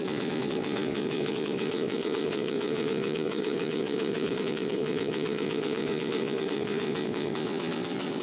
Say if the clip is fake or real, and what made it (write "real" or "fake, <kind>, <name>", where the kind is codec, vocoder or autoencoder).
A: fake, vocoder, Vocos